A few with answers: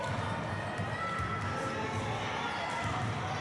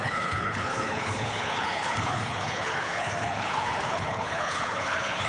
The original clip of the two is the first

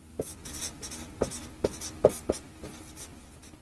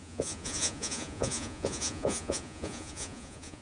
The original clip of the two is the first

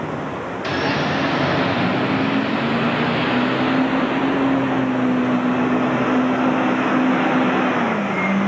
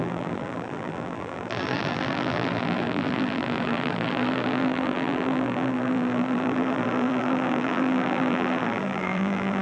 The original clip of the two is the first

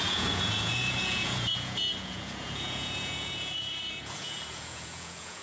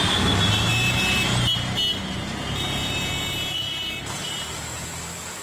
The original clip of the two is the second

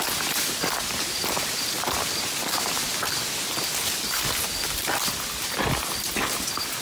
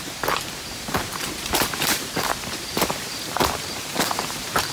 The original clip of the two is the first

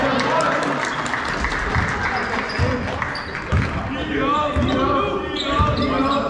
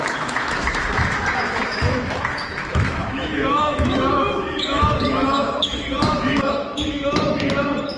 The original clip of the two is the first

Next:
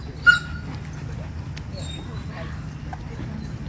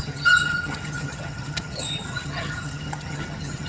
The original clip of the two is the first